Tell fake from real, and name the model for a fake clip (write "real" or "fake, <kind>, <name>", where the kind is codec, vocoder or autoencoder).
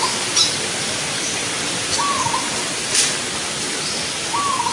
real